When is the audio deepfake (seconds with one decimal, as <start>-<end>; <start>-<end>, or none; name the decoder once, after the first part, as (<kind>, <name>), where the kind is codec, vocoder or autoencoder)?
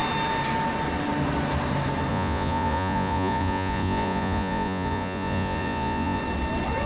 2.1-6.2 (vocoder, Vocos)